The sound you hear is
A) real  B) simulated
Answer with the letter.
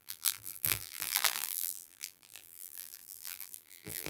B